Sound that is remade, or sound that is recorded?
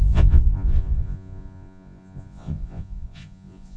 remade